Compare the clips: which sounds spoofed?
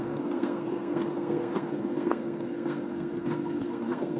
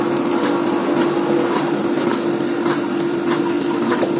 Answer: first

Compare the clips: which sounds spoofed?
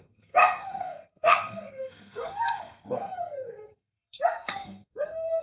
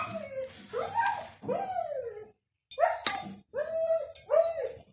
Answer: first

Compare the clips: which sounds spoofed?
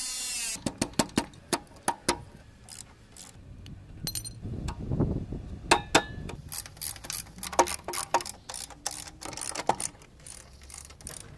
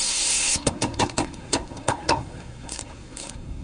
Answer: second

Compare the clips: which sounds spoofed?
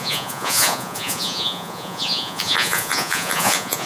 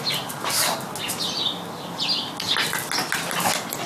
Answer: first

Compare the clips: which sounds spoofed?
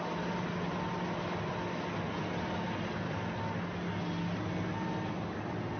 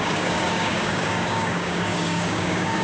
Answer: second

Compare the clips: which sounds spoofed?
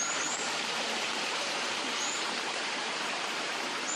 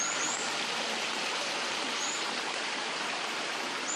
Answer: first